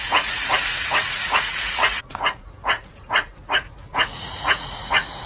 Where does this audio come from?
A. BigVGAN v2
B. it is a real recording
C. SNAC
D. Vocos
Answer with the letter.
D